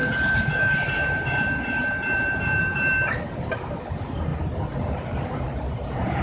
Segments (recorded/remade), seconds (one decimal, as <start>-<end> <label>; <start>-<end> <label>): 0.0-4.3 remade; 4.3-5.7 recorded; 5.7-6.2 remade